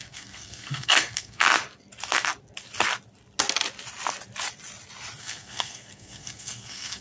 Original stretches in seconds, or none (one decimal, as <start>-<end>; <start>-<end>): 1.5-5.2